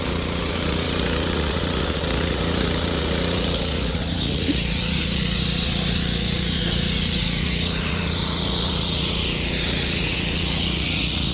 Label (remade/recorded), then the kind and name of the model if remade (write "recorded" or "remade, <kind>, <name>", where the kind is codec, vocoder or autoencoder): remade, vocoder, Vocos